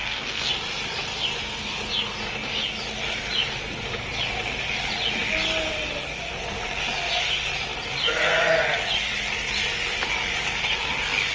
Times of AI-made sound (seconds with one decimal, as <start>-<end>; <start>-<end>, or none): 0.0-0.5